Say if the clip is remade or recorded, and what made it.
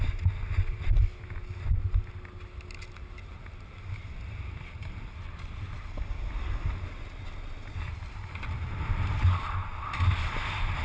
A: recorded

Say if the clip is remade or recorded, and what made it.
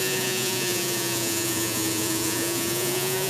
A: remade, vocoder, Vocos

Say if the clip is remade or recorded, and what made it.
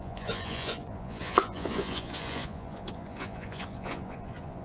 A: remade, vocoder, Vocos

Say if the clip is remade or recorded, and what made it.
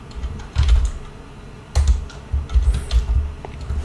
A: recorded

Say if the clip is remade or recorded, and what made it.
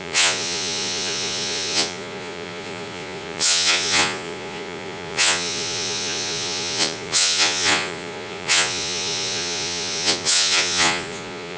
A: remade, vocoder, Vocos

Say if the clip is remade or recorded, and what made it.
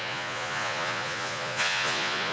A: remade, vocoder, Vocos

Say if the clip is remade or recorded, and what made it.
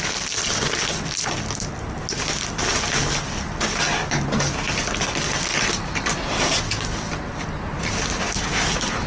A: recorded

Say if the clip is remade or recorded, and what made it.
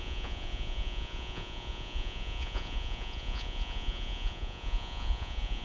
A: remade, vocoder, Vocos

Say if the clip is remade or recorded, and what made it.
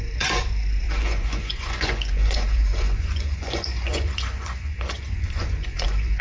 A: remade, vocoder, Vocos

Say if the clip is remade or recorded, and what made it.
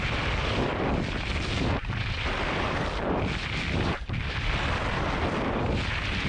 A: recorded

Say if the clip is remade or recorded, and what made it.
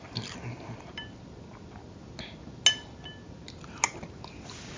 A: recorded